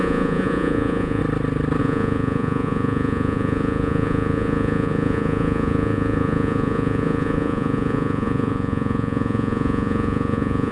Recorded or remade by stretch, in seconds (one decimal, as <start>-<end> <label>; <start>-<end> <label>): 0.0-1.2 remade; 1.2-1.8 recorded; 1.8-10.7 remade